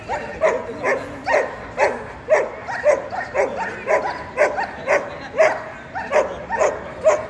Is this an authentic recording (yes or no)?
yes